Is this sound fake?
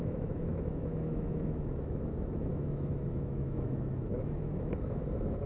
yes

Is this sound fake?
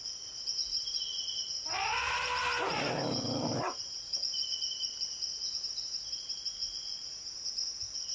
no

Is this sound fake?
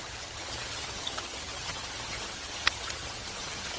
yes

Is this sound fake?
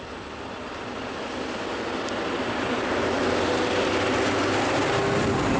no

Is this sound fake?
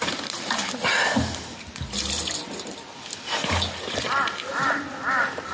no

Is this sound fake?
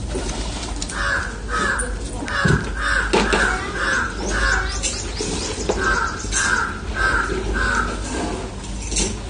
no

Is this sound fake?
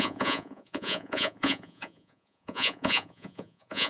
yes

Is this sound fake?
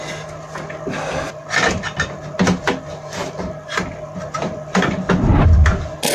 no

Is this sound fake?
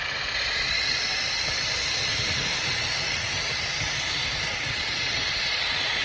no